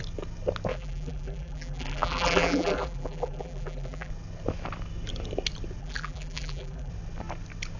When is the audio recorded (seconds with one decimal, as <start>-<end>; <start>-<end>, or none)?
0.0-0.7; 4.1-5.8; 6.9-7.8